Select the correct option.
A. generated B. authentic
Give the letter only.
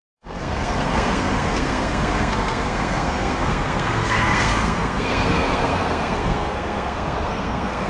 A